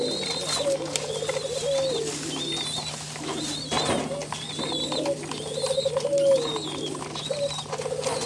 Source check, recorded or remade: recorded